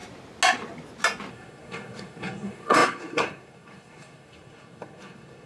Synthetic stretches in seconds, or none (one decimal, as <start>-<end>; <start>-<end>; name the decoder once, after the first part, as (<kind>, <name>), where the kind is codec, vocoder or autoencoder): 1.3-5.5 (codec, SNAC)